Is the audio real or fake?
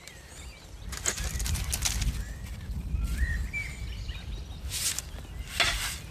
real